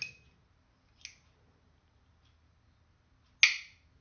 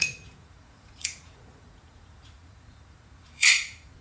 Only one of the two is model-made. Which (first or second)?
second